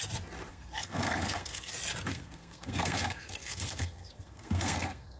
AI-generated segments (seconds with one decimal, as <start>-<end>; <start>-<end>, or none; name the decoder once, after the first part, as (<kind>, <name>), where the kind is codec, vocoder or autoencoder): 0.5-1.7 (codec, SNAC); 2.1-5.2